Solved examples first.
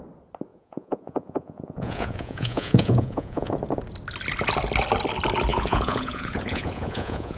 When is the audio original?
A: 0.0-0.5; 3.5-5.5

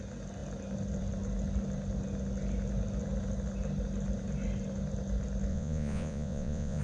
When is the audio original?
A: 0.0-5.5

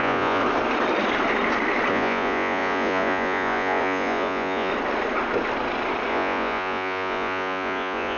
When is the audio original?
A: 0.4-1.9; 4.7-6.1

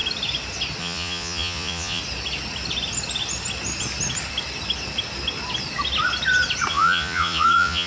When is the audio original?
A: 0.0-0.8; 2.0-6.7

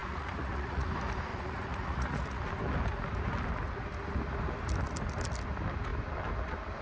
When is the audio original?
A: 0.9-1.3; 2.5-6.8